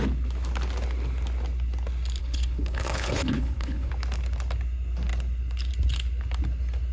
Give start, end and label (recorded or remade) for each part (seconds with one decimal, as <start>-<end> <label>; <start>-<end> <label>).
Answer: 0.0-2.2 recorded; 2.2-3.9 remade; 3.9-6.9 recorded